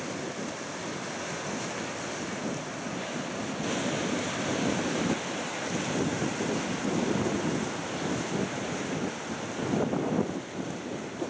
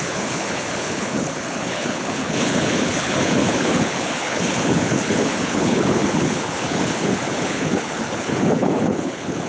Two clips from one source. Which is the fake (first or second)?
second